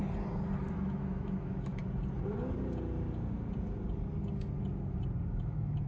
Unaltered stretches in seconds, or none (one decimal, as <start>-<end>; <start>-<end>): 0.0-0.6; 1.8-5.3